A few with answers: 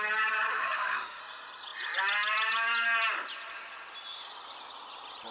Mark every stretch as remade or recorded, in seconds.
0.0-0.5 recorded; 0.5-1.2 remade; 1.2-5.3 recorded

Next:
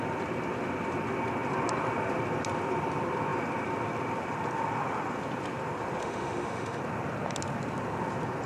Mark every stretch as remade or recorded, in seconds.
0.0-6.0 recorded; 6.0-6.8 remade; 6.8-8.5 recorded

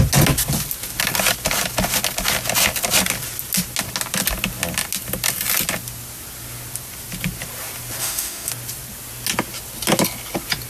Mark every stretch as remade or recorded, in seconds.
0.0-8.0 recorded; 8.0-8.5 remade; 8.5-10.7 recorded

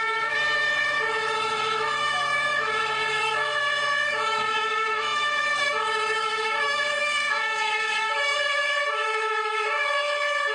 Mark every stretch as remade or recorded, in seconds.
0.0-10.5 remade

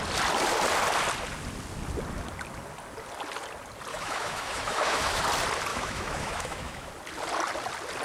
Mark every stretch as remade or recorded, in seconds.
0.0-3.9 recorded; 3.9-5.2 remade; 5.2-5.7 recorded; 5.7-6.9 remade; 6.9-8.0 recorded